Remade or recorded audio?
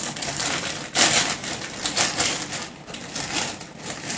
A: recorded